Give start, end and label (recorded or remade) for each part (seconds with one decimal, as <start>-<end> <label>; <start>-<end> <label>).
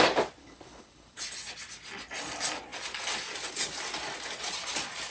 0.0-0.4 recorded; 0.4-1.2 remade; 1.2-5.1 recorded